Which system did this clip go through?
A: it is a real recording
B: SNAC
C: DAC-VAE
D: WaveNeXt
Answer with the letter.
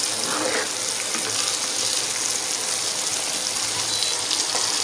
A